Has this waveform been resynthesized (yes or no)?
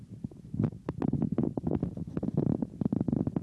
no